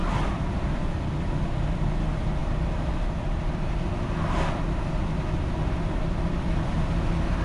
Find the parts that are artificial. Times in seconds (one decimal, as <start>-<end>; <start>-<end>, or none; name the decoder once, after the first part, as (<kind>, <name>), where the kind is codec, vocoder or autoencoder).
none